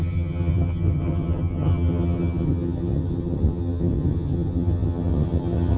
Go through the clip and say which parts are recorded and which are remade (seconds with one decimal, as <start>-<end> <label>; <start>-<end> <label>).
0.0-5.8 remade